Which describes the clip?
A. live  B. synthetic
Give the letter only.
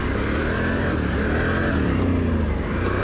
A